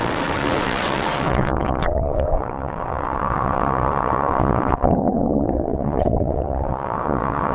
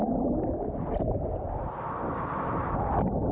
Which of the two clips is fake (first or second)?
first